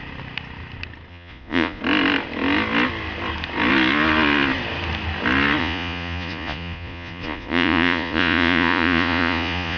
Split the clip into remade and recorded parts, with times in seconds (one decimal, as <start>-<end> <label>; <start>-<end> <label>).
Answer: 0.0-1.1 recorded; 1.1-1.8 remade; 1.8-5.6 recorded; 5.6-9.8 remade